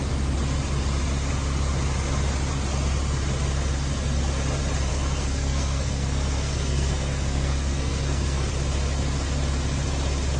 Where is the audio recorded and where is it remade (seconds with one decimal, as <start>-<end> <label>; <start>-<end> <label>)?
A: 0.0-4.9 recorded; 4.9-8.5 remade; 8.5-10.4 recorded